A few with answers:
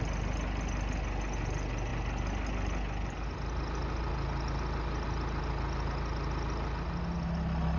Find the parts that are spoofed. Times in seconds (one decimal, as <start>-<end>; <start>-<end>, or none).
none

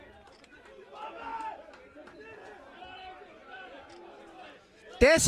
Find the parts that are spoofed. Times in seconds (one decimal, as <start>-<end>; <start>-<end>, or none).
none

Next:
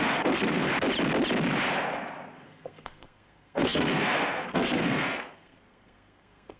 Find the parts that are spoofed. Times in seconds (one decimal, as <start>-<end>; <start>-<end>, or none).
0.0-0.7; 2.4-6.6

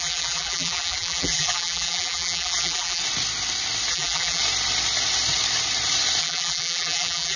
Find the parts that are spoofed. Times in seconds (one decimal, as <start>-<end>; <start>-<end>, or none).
0.0-3.0; 3.9-4.4; 6.2-7.4

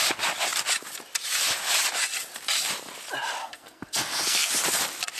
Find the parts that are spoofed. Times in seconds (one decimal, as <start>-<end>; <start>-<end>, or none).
3.4-4.5

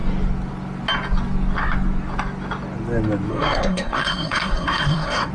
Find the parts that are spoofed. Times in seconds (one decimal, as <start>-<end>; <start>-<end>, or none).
3.3-5.3

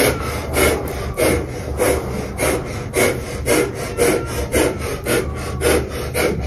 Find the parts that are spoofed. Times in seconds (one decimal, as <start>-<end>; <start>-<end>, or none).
4.5-5.2

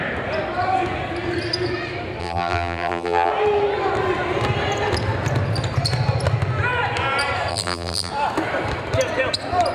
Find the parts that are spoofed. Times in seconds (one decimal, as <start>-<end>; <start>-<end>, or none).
2.2-3.3; 7.5-8.1